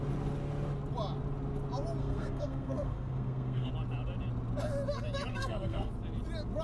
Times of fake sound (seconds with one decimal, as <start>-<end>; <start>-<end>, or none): 2.0-3.7; 5.3-5.9